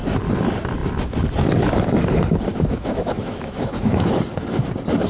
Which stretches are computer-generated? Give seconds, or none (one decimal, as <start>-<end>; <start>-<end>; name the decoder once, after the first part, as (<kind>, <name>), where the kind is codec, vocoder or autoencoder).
2.5-4.1 (autoencoder, DAC-VAE)